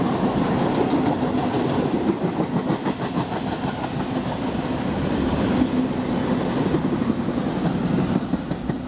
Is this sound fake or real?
real